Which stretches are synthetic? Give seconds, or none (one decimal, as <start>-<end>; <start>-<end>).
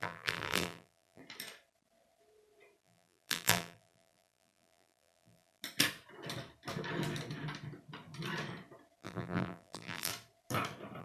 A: 0.0-1.2; 2.8-5.6; 9.0-10.1